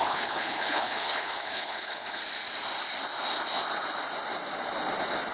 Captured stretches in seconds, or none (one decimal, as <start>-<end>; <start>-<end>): 2.2-5.3